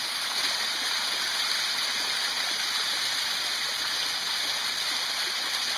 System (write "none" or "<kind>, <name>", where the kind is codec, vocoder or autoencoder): none